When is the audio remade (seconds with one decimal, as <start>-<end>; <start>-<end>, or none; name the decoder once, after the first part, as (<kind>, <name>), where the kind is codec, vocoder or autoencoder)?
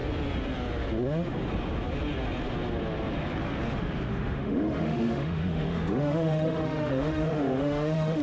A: 4.1-8.2 (autoencoder, DAC-VAE)